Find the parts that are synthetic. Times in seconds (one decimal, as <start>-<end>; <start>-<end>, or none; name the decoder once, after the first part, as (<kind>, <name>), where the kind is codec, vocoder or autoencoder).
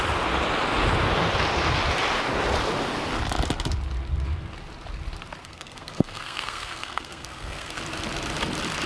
5.4-7.8 (codec, SNAC)